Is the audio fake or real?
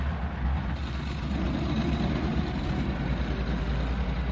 real